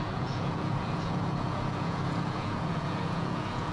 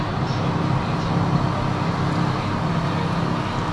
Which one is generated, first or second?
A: first